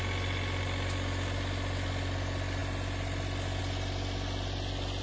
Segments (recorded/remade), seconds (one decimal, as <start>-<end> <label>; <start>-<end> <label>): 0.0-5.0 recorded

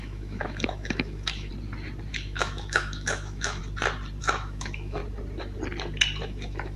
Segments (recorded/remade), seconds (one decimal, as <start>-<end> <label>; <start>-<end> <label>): 0.0-1.5 remade; 1.5-2.1 recorded; 2.1-3.6 remade; 3.6-4.2 recorded; 4.2-5.0 remade; 5.0-6.2 recorded; 6.2-6.8 remade

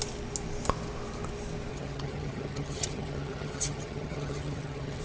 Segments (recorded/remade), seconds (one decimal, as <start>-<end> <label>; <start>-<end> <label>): 0.0-1.7 recorded; 1.7-5.0 remade

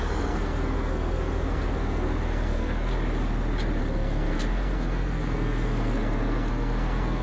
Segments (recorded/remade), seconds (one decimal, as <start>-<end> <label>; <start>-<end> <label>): 0.0-2.9 remade; 2.9-3.8 recorded; 3.8-7.2 remade

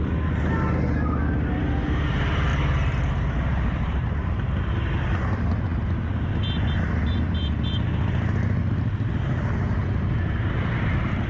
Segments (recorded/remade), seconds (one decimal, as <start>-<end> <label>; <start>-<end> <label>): 0.0-2.5 recorded; 2.5-4.3 remade; 4.3-9.8 recorded; 9.8-11.3 remade

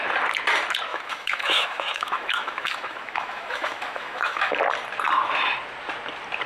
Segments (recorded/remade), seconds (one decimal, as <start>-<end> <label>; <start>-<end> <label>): 0.0-0.9 recorded; 0.9-4.6 remade; 4.6-6.5 recorded

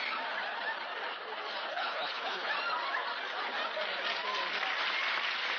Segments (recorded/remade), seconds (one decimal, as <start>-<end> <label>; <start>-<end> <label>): 0.0-1.7 recorded; 1.7-2.5 remade; 2.5-5.6 recorded